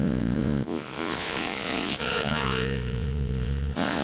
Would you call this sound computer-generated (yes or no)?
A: yes